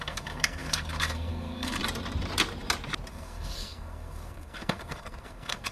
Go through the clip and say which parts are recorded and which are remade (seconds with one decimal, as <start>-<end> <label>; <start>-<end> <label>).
0.0-1.8 remade; 1.8-3.1 recorded; 3.1-5.7 remade